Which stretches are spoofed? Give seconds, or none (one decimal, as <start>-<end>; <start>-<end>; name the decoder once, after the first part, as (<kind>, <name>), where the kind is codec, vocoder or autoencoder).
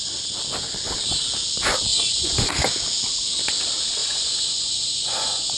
1.9-2.5 (vocoder, Vocos); 4.0-5.6